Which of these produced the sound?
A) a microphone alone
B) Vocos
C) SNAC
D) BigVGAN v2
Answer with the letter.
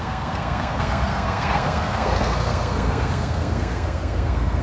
C